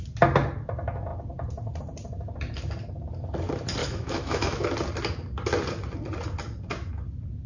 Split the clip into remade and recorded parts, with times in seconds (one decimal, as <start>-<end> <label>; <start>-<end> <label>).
0.0-3.8 recorded; 3.8-4.7 remade; 4.7-7.5 recorded